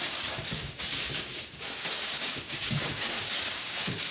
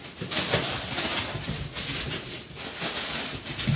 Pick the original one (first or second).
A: second